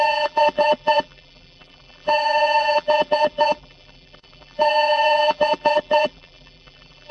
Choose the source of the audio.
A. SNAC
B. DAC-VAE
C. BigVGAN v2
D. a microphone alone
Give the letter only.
C